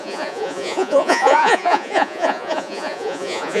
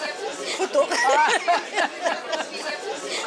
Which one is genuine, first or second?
second